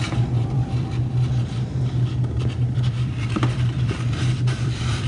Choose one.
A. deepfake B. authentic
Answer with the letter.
A